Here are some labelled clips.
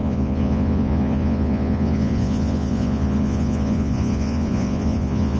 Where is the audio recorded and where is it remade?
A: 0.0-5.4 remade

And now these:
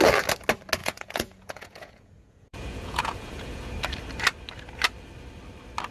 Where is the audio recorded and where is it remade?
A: 0.0-0.8 recorded; 0.8-3.7 remade; 3.7-5.9 recorded

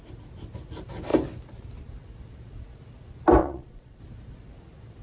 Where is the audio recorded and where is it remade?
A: 0.0-3.4 recorded; 3.4-4.0 remade; 4.0-5.0 recorded

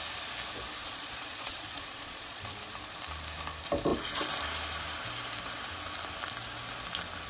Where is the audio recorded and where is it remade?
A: 0.0-0.8 recorded; 0.8-2.6 remade; 2.6-7.3 recorded

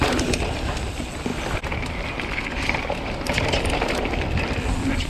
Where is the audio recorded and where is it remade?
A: 0.0-5.1 recorded

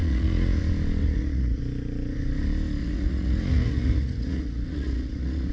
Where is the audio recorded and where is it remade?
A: 0.0-0.6 remade; 0.6-1.0 recorded; 1.0-1.6 remade; 1.6-2.8 recorded; 2.8-5.5 remade